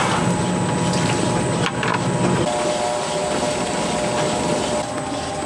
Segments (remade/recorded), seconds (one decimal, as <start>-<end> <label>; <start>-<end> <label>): 0.0-5.5 recorded